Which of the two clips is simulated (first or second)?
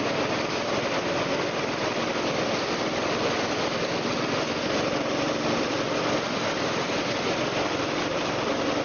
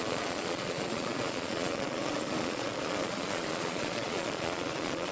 second